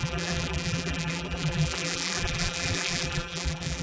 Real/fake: fake